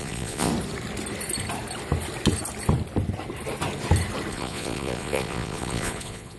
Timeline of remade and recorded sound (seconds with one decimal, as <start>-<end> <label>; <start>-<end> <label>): 0.0-0.5 remade; 0.5-4.3 recorded; 4.3-6.4 remade